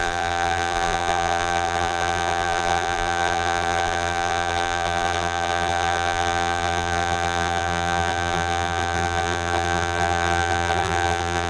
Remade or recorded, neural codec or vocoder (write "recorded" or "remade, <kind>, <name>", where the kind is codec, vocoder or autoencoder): remade, vocoder, BigVGAN v2